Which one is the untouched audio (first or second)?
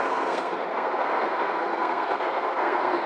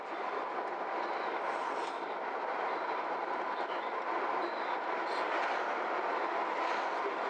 second